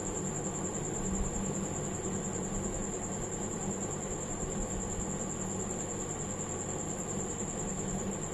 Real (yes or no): yes